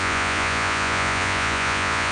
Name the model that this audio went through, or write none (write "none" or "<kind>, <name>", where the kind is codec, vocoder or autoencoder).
vocoder, Vocos